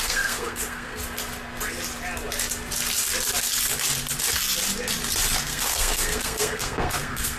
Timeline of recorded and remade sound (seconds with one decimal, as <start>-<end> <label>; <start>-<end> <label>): 0.0-1.0 remade; 1.0-5.4 recorded; 5.4-7.4 remade